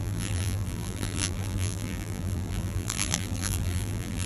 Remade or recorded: remade